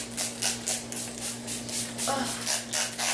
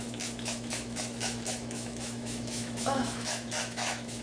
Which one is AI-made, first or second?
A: second